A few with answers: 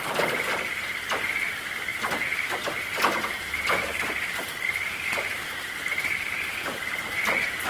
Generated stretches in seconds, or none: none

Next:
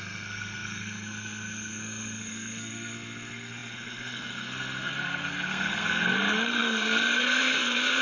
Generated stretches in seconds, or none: 0.0-8.0 (codec, SNAC)

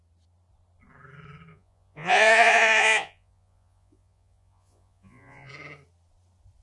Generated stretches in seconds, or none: 1.5-5.5 (vocoder, Vocos)

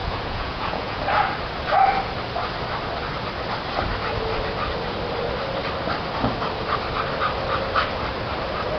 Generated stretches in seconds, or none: 0.0-1.0 (vocoder, Vocos)

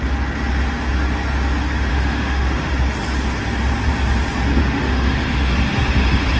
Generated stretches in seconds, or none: 1.9-2.7 (autoencoder, DAC-VAE); 4.6-5.5